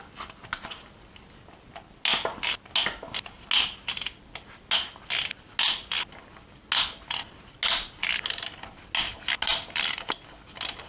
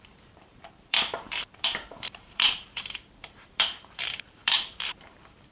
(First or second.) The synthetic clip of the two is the second